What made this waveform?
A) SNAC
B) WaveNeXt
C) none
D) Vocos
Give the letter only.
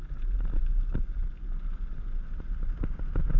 C